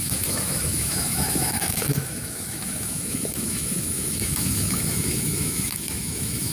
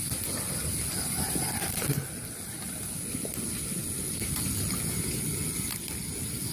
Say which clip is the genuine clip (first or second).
second